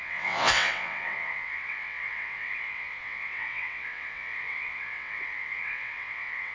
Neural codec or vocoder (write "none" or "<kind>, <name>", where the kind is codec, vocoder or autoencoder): vocoder, WaveNeXt